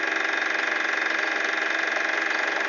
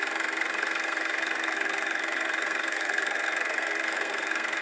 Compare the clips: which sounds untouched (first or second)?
first